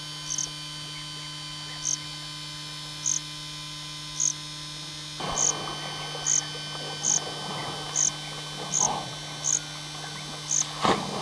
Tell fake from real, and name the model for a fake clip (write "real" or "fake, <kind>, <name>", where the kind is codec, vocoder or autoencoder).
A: real